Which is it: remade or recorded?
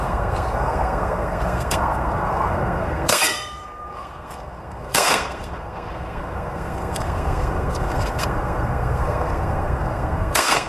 remade